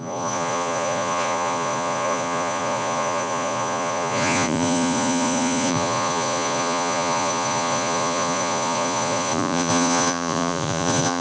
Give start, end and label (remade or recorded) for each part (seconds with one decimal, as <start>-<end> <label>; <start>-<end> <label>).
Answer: 0.0-11.2 remade